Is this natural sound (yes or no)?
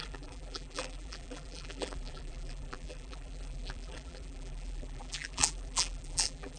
no